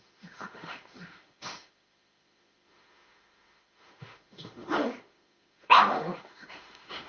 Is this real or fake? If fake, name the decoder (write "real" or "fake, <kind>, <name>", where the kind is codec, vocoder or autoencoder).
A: fake, autoencoder, DAC-VAE